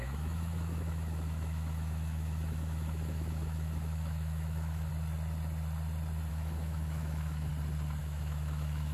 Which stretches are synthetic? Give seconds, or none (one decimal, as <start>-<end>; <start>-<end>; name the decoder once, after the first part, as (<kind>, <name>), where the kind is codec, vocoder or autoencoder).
0.0-4.9 (autoencoder, DAC-VAE); 6.3-7.5; 8.0-8.9